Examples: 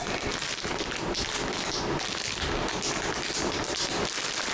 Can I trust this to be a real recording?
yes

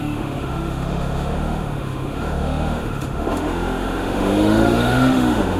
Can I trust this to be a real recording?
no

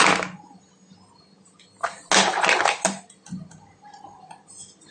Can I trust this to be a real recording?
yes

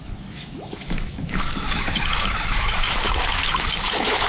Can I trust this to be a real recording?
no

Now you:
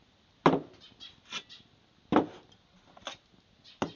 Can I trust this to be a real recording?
yes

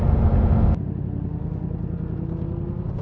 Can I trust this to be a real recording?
yes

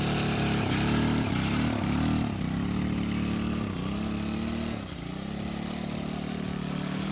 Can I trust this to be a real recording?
yes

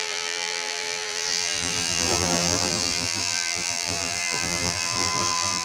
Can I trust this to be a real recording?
no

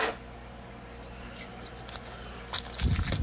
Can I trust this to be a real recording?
yes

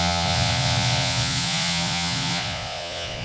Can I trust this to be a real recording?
no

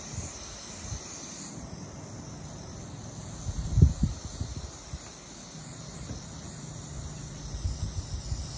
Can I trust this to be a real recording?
yes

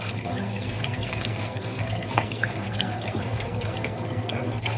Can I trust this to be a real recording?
no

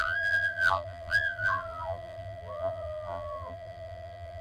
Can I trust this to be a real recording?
no